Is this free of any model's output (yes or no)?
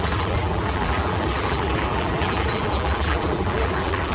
no